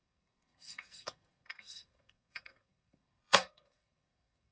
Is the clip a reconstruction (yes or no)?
yes